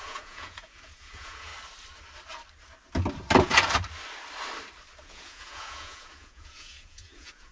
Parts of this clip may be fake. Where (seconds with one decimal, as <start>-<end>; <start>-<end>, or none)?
0.0-1.5; 5.0-7.5